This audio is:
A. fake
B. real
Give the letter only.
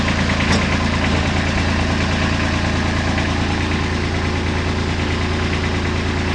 B